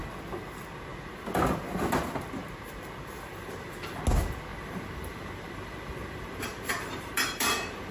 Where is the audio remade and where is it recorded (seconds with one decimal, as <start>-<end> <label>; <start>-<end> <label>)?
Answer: 0.0-3.3 recorded; 3.3-4.0 remade; 4.0-4.5 recorded; 4.5-7.9 remade